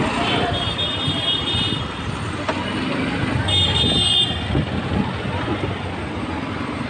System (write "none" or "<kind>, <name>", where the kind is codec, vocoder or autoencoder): none